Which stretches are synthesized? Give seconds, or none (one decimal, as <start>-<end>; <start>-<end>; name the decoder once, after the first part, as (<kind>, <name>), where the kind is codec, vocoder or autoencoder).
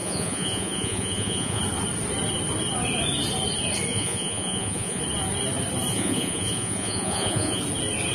0.0-1.6 (vocoder, Vocos); 3.9-5.0; 5.9-7.6